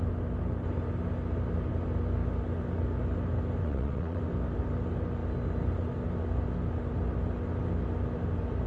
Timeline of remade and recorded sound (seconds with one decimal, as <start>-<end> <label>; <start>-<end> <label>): 0.0-3.6 recorded; 3.6-4.2 remade; 4.2-8.7 recorded